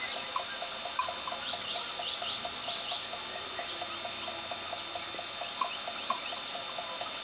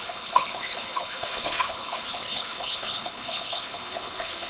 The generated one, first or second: second